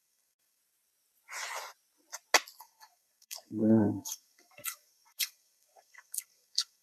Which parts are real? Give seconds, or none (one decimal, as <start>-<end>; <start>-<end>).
0.6-2.6